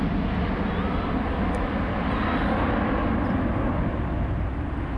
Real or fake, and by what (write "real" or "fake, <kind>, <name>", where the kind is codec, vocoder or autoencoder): real